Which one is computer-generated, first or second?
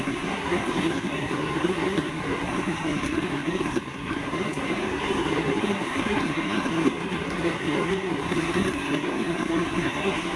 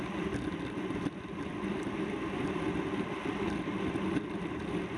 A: first